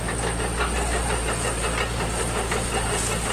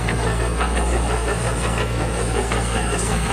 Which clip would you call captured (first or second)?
first